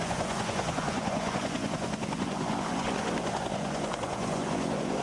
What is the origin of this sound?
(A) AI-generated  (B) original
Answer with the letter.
A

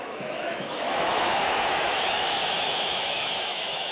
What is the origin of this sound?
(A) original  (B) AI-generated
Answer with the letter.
B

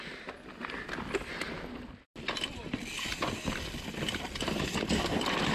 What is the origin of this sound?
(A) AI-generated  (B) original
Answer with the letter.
B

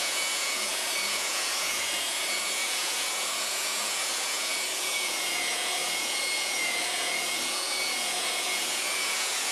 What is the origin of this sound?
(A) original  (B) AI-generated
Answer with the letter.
B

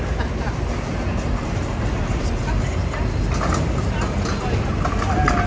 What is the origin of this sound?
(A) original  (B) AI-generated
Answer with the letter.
A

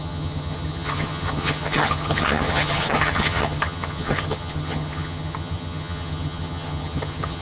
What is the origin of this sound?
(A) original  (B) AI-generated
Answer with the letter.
B